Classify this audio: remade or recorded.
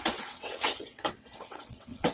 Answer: remade